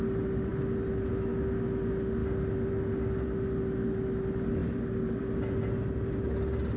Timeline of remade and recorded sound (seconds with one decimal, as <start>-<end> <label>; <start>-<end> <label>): 0.0-6.8 recorded